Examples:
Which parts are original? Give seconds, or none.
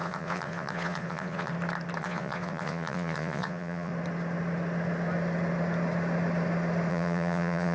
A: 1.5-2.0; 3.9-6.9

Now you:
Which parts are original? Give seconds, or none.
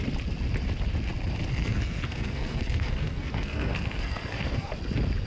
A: 0.0-1.5; 4.7-5.3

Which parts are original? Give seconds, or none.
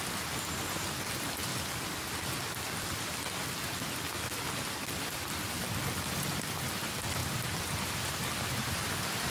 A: 1.5-5.3; 7.2-8.1